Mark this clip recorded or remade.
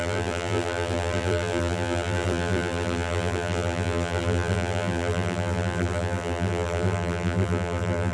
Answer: remade